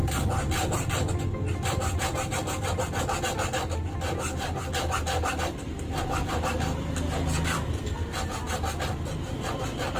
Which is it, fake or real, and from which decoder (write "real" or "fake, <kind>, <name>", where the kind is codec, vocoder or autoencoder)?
real